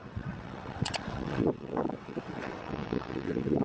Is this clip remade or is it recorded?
remade